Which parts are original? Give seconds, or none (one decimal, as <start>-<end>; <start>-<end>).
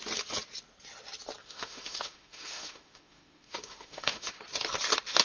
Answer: 0.0-1.4; 4.4-5.2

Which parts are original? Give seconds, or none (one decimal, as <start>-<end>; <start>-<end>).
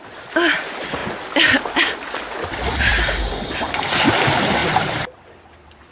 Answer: 0.0-5.9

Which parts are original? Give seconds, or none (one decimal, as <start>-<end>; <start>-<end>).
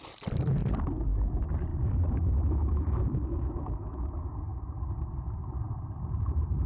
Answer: 0.0-1.7; 4.1-6.7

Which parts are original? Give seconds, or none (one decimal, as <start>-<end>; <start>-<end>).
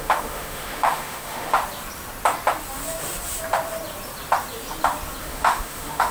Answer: 1.6-5.2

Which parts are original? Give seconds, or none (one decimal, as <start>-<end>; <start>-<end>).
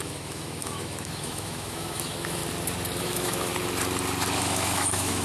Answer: 2.4-3.0; 3.5-4.4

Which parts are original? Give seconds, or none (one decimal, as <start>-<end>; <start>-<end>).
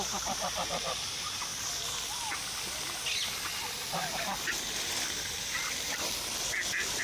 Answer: 0.0-7.0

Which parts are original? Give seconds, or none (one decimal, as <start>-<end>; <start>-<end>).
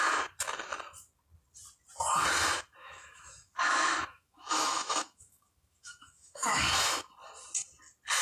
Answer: 0.0-2.8; 6.6-8.2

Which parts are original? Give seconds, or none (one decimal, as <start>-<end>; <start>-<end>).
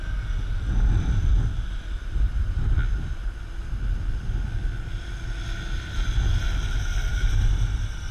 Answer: 0.0-8.1